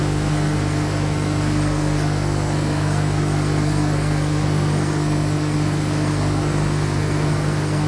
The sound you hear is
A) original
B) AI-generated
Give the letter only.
B